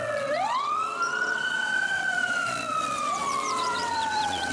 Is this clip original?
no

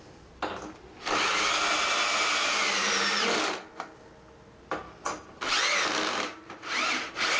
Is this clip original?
yes